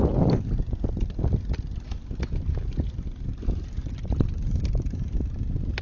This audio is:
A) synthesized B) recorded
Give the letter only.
B